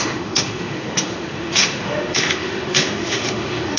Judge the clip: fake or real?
fake